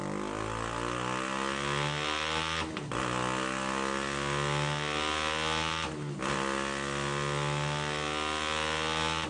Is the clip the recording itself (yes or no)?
yes